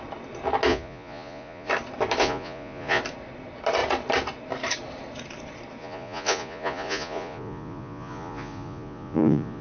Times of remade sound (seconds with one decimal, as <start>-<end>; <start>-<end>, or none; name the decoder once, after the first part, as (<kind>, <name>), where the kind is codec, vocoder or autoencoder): 0.7-1.7 (vocoder, Vocos); 2.2-3.0; 5.8-9.6